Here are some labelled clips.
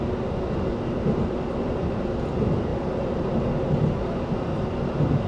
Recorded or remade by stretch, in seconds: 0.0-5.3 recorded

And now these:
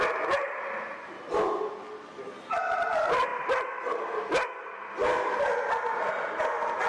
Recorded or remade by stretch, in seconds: 0.0-6.9 recorded

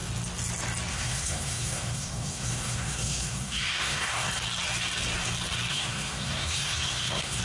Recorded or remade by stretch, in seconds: 0.0-0.9 recorded; 0.9-4.3 remade; 4.3-5.7 recorded; 5.7-7.4 remade

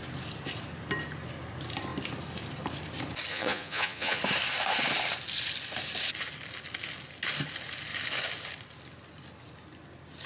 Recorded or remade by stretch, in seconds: 0.0-3.3 recorded; 3.3-4.2 remade; 4.2-10.3 recorded